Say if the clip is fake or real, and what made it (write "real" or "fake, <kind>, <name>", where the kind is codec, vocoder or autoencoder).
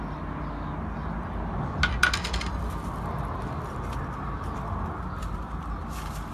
real